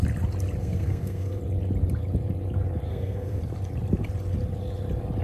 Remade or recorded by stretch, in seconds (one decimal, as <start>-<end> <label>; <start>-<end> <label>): 0.0-0.6 recorded; 0.6-1.4 remade; 1.4-2.9 recorded; 2.9-3.4 remade; 3.4-5.2 recorded